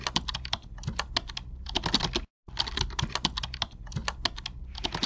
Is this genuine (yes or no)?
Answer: yes